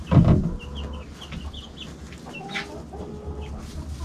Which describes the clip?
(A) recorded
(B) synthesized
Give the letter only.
A